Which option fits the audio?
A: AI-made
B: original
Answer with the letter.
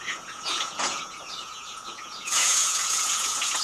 A